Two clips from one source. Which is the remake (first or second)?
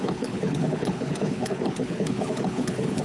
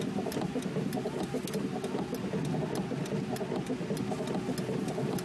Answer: first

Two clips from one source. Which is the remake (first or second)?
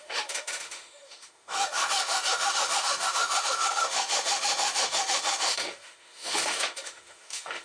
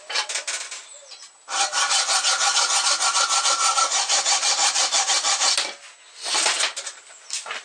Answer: first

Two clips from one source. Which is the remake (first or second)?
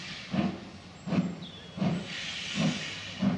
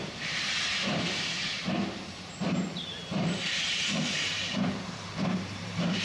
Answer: second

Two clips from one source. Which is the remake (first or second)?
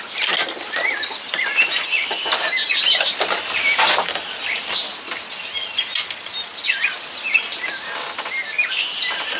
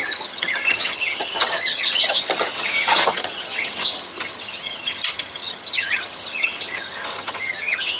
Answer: second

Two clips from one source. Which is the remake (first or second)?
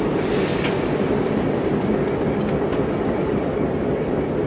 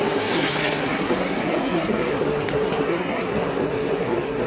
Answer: second